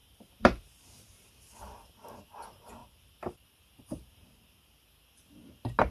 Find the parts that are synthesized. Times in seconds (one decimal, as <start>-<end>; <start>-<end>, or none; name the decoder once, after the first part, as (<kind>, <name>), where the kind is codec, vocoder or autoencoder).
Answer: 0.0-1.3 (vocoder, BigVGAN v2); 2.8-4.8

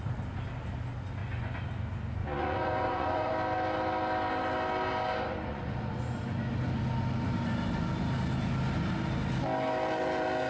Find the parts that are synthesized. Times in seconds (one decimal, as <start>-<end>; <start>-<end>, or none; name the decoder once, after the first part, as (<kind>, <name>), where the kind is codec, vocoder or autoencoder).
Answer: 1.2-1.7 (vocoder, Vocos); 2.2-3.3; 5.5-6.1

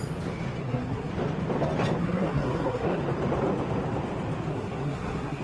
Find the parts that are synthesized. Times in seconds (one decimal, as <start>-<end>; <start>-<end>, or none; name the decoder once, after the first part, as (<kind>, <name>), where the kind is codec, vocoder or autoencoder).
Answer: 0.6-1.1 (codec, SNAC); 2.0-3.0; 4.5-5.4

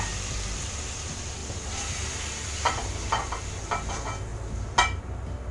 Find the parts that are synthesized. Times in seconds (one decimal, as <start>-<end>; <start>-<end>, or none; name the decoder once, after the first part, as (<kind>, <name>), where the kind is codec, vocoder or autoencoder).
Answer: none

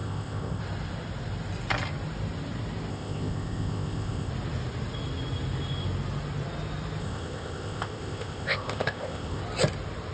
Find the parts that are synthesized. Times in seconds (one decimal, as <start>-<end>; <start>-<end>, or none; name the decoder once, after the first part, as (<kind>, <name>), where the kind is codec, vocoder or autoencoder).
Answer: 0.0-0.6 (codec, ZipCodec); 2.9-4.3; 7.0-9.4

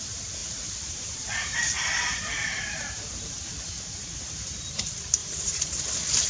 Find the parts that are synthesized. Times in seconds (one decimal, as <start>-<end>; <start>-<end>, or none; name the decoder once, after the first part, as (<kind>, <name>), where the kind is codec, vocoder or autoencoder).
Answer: 0.4-4.2 (vocoder, BigVGAN v2); 5.2-5.8